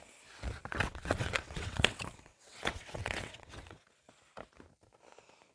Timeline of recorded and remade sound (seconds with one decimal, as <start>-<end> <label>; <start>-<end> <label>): 0.0-0.7 recorded; 0.7-3.8 remade; 3.8-5.5 recorded